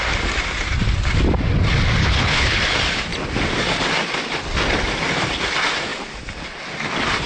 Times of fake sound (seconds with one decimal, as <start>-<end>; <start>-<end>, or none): 2.0-2.6